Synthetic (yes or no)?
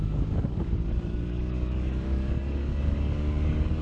yes